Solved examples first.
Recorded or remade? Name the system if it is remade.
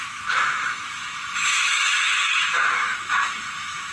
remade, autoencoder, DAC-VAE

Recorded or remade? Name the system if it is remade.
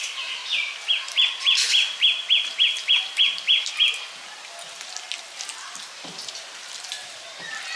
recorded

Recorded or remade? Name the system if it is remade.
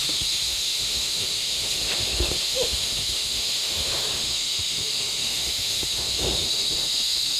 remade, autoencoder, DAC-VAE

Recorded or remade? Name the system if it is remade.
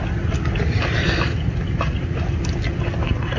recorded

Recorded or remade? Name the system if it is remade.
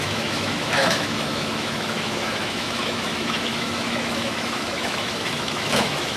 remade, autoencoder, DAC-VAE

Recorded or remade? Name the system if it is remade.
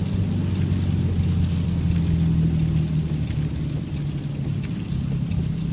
recorded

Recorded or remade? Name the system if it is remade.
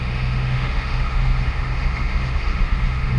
remade, autoencoder, DAC-VAE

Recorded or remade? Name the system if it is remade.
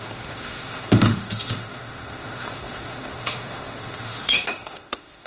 remade, autoencoder, DAC-VAE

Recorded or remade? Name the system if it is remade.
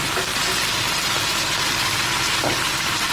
recorded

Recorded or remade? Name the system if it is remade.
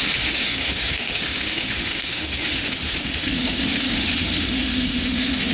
remade, autoencoder, DAC-VAE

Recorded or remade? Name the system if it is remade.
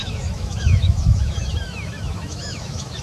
remade, autoencoder, DAC-VAE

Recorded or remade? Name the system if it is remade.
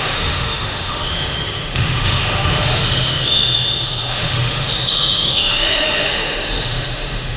remade, autoencoder, DAC-VAE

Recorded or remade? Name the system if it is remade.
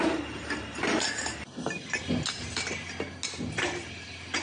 recorded